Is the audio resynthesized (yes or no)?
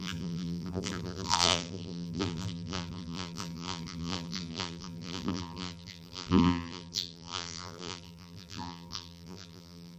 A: yes